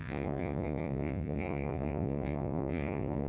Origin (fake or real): fake